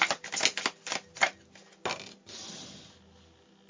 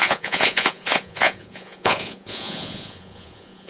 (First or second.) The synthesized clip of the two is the second